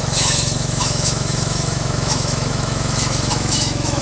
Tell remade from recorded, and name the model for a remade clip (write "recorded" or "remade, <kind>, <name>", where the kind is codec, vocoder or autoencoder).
remade, autoencoder, DAC-VAE